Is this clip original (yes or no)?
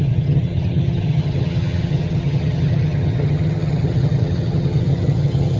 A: no